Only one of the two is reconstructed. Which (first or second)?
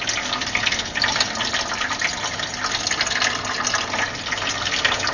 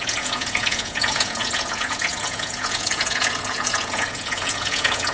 second